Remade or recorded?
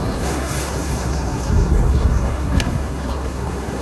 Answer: remade